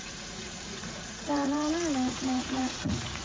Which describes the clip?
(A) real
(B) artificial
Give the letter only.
B